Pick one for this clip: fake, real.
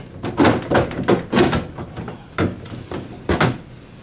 real